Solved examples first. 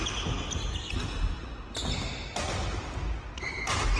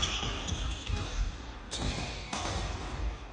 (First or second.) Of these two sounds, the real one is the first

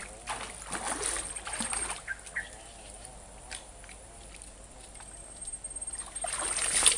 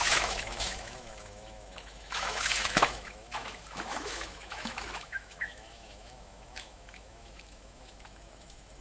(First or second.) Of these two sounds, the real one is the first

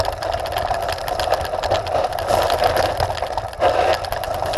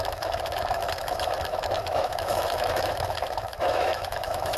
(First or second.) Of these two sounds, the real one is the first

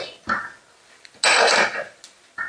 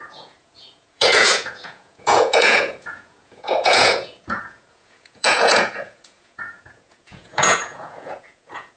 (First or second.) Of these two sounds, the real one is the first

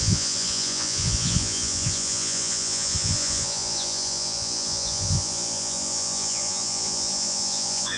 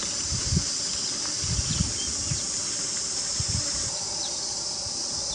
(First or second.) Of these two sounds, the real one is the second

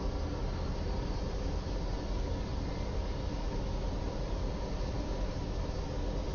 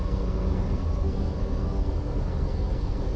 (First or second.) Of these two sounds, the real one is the first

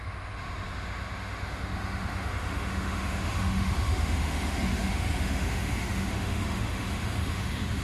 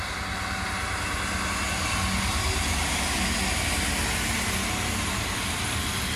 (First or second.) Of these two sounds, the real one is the second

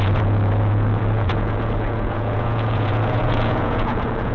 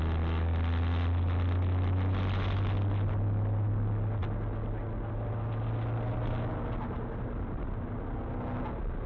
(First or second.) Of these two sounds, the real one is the second